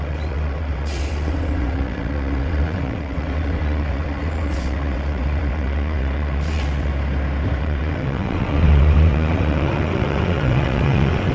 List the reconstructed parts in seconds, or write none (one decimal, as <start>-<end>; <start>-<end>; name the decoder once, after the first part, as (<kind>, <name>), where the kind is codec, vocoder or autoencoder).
0.0-6.9 (vocoder, WaveNeXt); 7.6-11.3